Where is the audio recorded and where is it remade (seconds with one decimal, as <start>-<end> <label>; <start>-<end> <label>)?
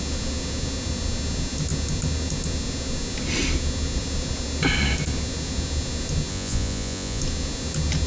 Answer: 0.0-6.3 recorded; 6.3-7.2 remade; 7.2-8.1 recorded